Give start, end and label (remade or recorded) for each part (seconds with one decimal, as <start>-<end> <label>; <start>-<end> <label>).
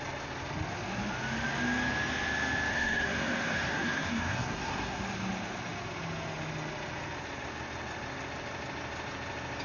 0.0-2.7 recorded; 2.7-5.0 remade; 5.0-9.6 recorded